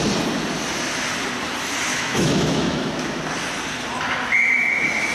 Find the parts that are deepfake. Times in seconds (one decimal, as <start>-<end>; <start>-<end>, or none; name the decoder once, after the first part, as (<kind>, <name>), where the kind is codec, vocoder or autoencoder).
1.9-3.2 (autoencoder, DAC-VAE)